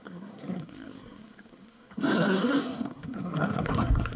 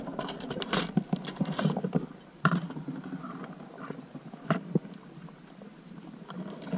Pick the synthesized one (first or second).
first